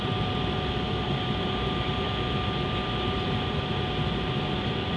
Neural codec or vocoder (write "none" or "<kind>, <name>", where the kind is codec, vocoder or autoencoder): none